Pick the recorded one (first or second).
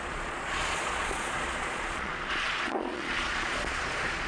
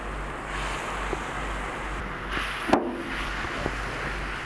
second